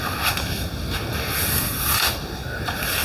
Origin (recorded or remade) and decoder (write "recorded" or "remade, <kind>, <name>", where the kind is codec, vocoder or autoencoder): recorded